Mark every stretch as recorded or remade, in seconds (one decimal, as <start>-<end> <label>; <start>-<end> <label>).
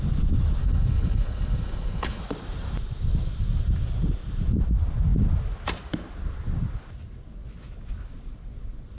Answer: 0.0-0.6 recorded; 0.6-2.2 remade; 2.2-9.0 recorded